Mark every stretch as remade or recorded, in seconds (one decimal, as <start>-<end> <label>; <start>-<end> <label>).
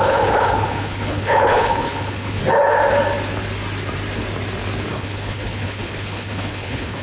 0.0-2.4 remade; 2.4-4.9 recorded; 4.9-7.0 remade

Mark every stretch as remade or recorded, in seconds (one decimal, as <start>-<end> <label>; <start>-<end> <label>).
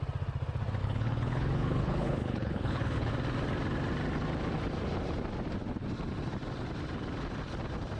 0.0-0.8 recorded; 0.8-3.1 remade; 3.1-8.0 recorded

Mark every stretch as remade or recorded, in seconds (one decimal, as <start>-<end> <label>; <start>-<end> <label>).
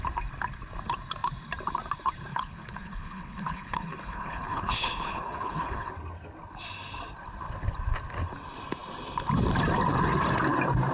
0.0-2.3 recorded; 2.3-5.9 remade; 5.9-10.9 recorded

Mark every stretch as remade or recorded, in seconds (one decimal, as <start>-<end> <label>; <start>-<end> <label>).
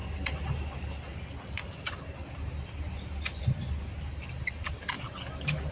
0.0-5.7 recorded